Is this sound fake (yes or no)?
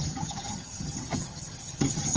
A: yes